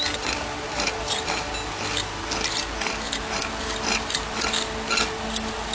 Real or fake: real